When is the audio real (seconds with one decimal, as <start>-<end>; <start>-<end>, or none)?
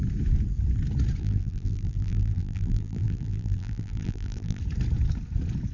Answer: 0.0-1.2; 4.6-5.7